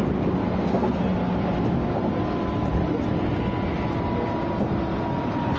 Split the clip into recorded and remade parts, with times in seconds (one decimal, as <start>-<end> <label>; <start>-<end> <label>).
0.0-0.4 recorded; 0.4-1.0 remade; 1.0-5.6 recorded